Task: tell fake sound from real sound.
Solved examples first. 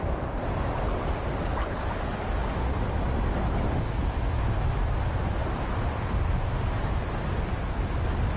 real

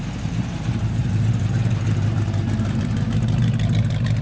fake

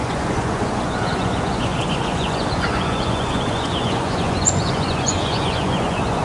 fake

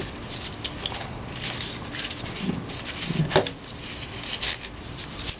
real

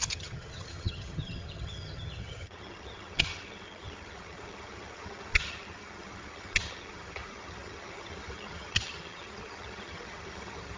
fake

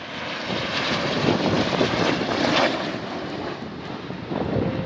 real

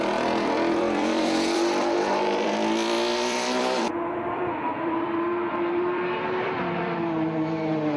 fake